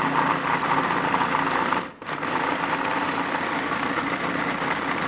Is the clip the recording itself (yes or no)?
yes